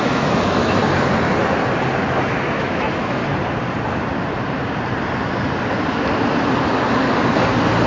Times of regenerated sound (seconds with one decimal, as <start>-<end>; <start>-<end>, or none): 0.0-0.8; 2.2-3.2